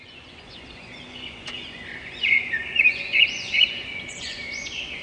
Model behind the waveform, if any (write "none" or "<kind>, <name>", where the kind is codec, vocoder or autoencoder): vocoder, Vocos